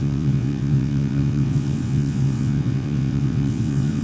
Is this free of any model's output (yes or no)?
no